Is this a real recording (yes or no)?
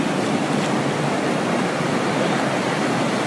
yes